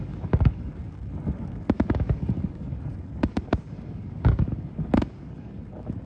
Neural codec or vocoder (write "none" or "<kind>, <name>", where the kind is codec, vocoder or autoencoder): codec, DAC